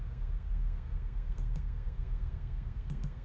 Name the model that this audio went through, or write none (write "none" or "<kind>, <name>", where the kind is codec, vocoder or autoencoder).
codec, SNAC